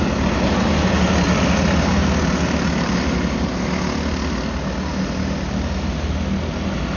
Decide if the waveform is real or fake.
real